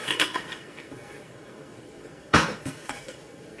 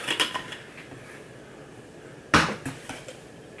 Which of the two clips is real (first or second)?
second